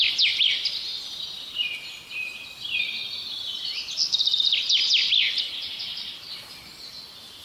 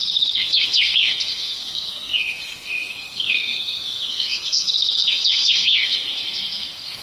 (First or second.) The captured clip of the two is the first